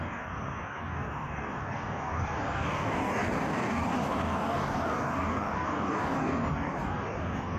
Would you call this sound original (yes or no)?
no